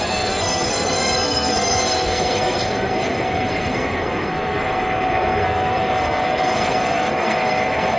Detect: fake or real fake